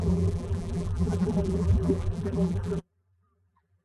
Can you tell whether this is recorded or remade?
remade